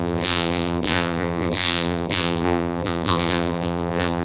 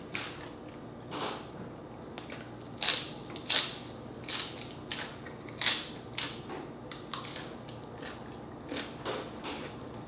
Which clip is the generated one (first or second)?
first